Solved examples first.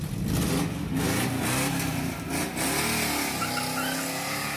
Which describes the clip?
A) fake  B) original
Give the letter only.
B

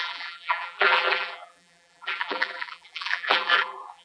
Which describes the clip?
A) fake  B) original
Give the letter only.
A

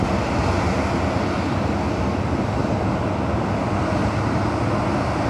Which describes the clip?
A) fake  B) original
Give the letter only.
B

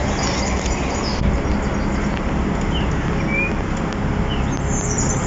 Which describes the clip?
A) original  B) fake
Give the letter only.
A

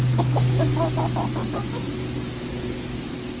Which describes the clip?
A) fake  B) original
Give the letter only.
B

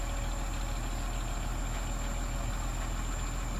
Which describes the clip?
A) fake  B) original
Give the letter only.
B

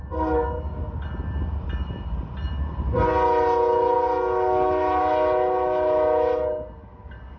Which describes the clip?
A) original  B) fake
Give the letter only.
A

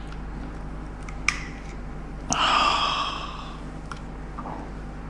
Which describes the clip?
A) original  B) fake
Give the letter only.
A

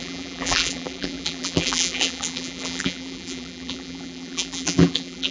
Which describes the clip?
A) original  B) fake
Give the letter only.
B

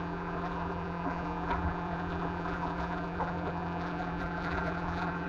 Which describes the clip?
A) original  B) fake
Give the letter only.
B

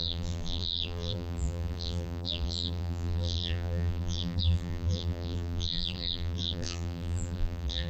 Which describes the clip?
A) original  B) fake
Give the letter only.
B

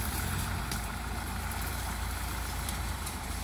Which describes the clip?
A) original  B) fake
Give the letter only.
B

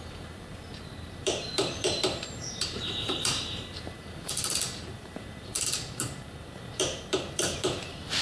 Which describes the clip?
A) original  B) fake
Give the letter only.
B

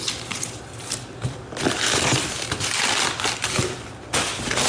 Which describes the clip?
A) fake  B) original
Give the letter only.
B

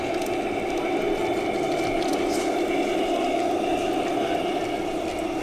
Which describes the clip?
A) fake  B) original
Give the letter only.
B